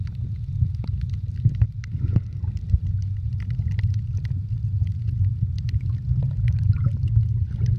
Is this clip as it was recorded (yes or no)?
yes